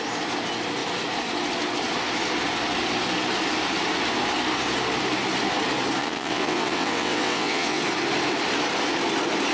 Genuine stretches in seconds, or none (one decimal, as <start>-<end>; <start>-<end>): 0.0-6.0; 7.8-9.5